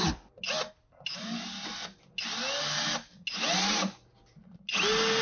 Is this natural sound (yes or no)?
yes